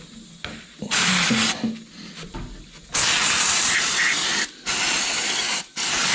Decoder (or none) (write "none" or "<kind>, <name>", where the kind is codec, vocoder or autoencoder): none